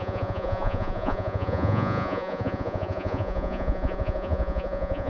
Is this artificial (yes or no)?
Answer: yes